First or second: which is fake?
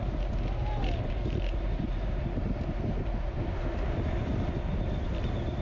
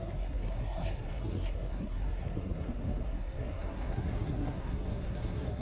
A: second